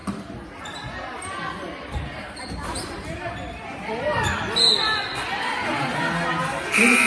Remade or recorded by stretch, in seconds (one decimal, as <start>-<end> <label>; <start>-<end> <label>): 0.0-7.1 recorded